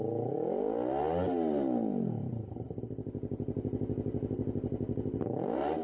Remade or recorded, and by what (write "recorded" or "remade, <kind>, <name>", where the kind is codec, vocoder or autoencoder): recorded